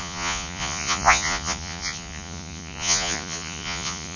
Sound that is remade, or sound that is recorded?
remade